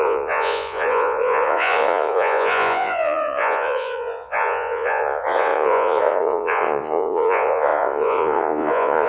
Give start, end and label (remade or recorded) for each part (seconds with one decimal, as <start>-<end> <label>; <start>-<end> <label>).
0.0-9.1 remade